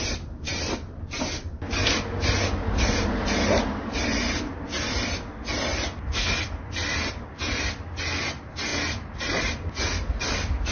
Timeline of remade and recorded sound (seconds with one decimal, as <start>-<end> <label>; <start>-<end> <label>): 0.0-10.7 recorded